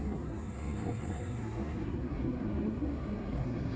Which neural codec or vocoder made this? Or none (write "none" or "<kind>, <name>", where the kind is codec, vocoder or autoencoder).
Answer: codec, SNAC